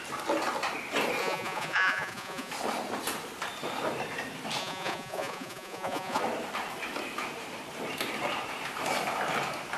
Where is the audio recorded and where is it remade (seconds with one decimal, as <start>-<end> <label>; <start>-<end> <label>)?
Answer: 0.0-1.2 recorded; 1.2-2.5 remade; 2.5-4.6 recorded; 4.6-6.2 remade; 6.2-9.8 recorded